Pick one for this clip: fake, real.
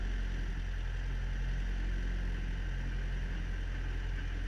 real